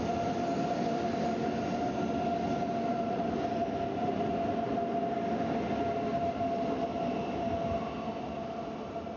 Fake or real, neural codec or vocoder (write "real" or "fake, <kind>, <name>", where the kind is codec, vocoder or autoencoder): real